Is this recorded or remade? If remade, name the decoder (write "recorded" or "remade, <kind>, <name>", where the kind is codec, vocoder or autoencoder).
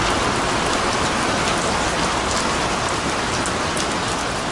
recorded